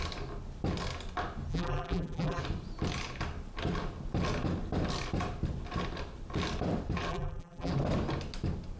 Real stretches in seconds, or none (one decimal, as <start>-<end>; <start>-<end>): 0.0-1.5; 2.4-7.1; 7.7-8.8